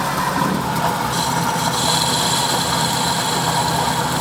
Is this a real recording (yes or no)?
yes